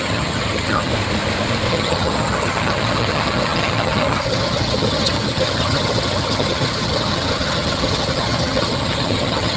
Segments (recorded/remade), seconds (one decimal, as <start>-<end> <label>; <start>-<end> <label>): 0.0-0.9 remade; 0.9-1.7 recorded; 1.7-9.6 remade